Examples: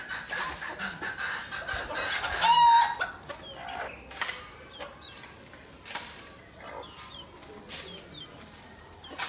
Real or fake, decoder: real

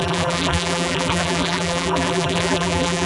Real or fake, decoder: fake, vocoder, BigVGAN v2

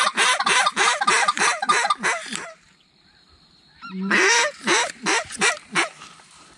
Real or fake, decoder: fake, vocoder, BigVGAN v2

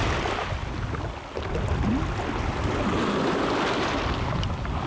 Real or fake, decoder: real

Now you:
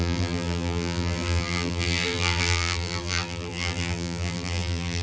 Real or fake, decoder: fake, vocoder, BigVGAN v2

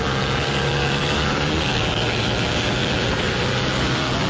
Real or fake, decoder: fake, vocoder, BigVGAN v2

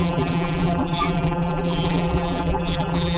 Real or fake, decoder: fake, vocoder, BigVGAN v2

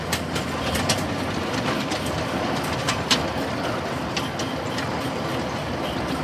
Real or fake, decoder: real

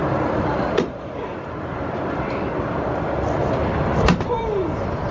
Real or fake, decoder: fake, vocoder, BigVGAN v2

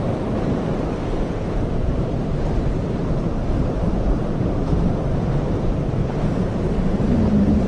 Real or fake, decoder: fake, vocoder, BigVGAN v2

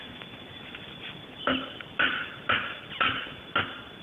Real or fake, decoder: real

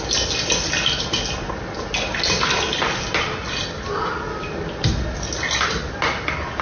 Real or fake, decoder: real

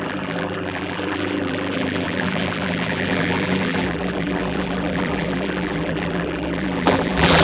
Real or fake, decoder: fake, vocoder, BigVGAN v2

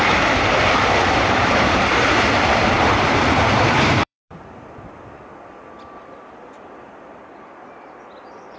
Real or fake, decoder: fake, vocoder, BigVGAN v2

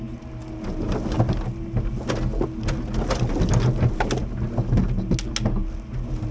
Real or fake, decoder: real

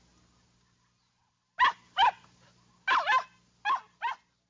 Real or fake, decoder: real